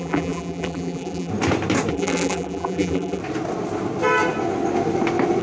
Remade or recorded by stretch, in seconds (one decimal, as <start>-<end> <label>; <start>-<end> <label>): 0.0-1.3 remade; 1.3-1.9 recorded; 1.9-3.2 remade; 3.2-5.4 recorded

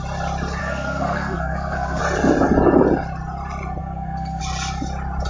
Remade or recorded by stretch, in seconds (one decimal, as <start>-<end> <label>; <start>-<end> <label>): 0.0-0.6 recorded; 0.6-2.0 remade; 2.0-3.8 recorded; 3.8-4.4 remade; 4.4-5.3 recorded

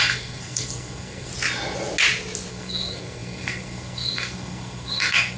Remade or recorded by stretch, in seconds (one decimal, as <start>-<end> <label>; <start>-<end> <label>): 0.0-1.3 remade; 1.3-2.5 recorded; 2.5-5.4 remade

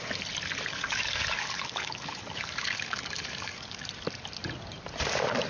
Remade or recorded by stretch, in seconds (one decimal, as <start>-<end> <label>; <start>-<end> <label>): 0.0-0.7 recorded; 0.7-3.9 remade; 3.9-5.5 recorded

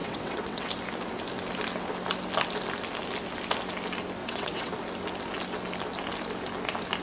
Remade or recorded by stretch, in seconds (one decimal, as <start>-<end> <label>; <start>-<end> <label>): 0.0-0.7 remade; 0.7-4.2 recorded; 4.2-4.7 remade; 4.7-7.0 recorded

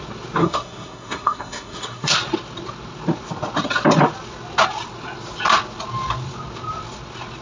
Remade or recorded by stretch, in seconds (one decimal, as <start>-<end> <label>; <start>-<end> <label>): 0.0-0.4 recorded; 0.4-2.1 remade; 2.1-7.4 recorded

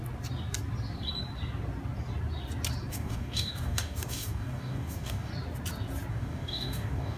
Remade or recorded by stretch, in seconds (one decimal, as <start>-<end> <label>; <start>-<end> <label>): 0.0-2.9 recorded; 2.9-5.3 remade; 5.3-6.1 recorded; 6.1-7.2 remade